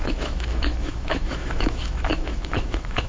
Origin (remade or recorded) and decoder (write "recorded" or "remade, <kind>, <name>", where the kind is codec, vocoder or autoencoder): remade, autoencoder, DAC-VAE